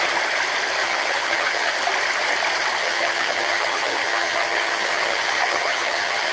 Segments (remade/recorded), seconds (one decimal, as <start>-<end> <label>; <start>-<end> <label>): 0.0-0.8 recorded; 0.8-1.7 remade; 1.7-2.8 recorded; 2.8-6.3 remade